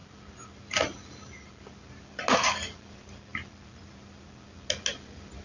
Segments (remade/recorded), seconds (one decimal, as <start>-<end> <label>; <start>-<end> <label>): 0.0-5.4 recorded